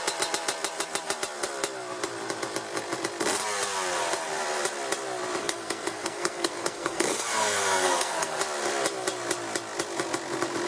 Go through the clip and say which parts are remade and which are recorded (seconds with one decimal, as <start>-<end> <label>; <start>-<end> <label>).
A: 0.0-5.4 recorded; 5.4-8.4 remade; 8.4-10.7 recorded